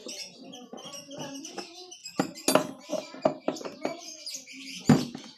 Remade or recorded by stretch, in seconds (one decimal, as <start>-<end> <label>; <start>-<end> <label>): 0.0-5.4 recorded